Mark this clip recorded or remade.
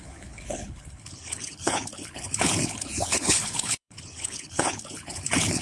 remade